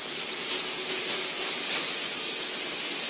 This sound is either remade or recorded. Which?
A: recorded